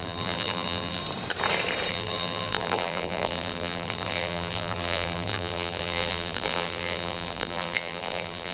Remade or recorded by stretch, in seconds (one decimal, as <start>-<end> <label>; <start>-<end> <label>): 0.0-1.0 remade; 1.0-1.9 recorded; 1.9-8.5 remade